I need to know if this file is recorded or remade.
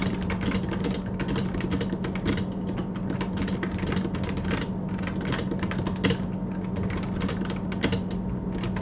recorded